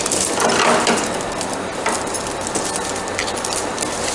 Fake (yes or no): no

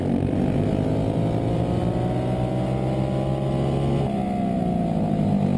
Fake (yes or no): no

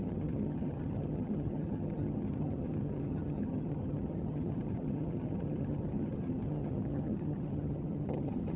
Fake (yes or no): yes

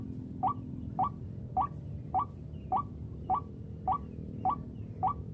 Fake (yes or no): no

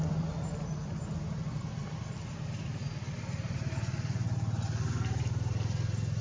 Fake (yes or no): no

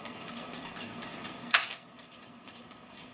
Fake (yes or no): yes